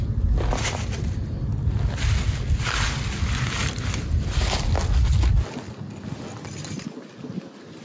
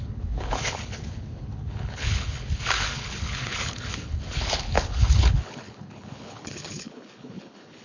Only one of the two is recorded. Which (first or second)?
first